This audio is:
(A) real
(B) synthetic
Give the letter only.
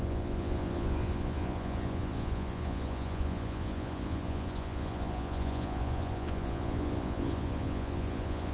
B